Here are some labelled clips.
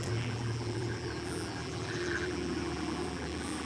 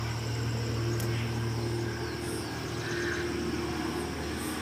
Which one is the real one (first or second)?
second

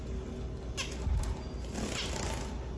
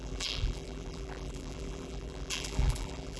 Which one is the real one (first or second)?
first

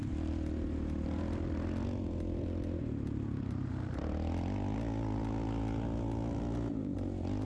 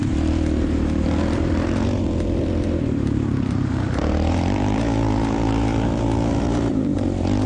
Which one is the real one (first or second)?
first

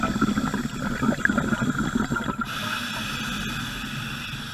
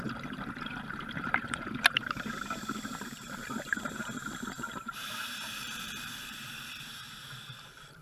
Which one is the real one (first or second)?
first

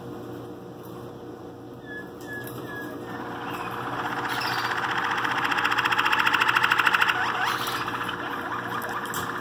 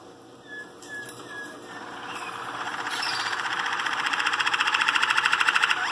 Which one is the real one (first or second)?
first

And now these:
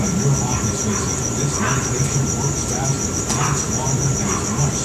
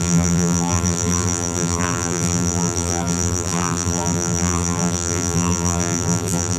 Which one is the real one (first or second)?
first